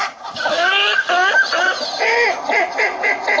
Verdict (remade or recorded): recorded